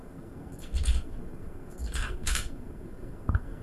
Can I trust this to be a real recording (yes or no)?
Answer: no